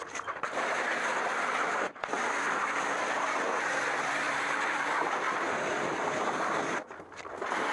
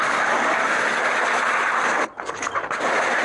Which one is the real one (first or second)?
second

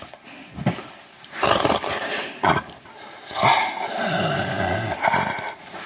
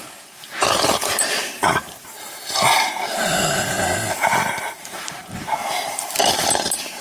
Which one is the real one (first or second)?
first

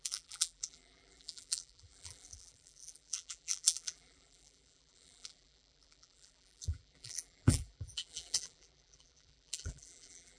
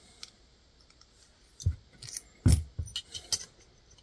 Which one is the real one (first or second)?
second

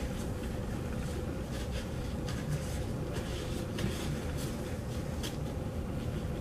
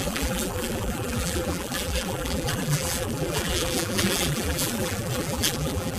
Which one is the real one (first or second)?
first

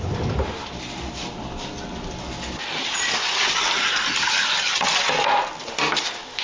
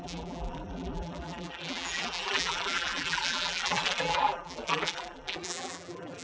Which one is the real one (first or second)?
first